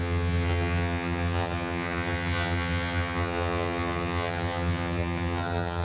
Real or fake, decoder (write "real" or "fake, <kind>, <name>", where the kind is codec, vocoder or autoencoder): fake, vocoder, HiFi-GAN